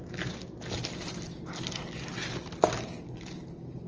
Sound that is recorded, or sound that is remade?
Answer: recorded